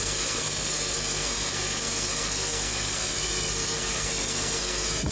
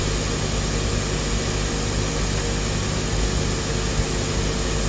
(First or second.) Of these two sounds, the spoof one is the first